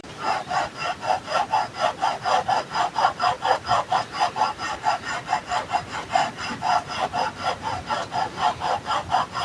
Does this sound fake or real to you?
fake